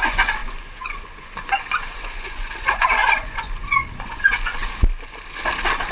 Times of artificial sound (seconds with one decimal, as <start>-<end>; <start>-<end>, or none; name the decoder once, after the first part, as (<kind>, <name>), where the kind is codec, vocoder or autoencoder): 0.0-4.6 (vocoder, Vocos)